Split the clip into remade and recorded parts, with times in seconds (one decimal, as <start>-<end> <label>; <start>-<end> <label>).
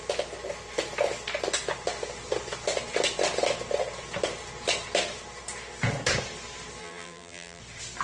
0.0-6.8 recorded; 6.8-7.6 remade; 7.6-8.0 recorded